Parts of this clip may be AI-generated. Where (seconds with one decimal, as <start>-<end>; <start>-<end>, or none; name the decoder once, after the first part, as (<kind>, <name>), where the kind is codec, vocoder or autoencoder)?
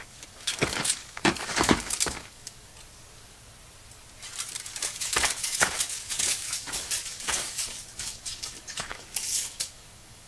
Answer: 0.0-2.7 (codec, DAC); 4.5-10.3